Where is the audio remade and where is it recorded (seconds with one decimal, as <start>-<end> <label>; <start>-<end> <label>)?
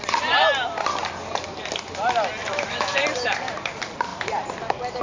0.0-2.4 recorded; 2.4-3.0 remade; 3.0-5.0 recorded